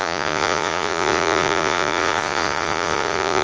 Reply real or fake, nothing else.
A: fake